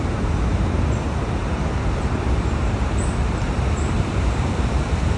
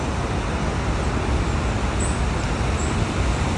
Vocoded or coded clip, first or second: first